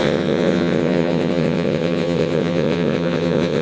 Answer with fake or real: fake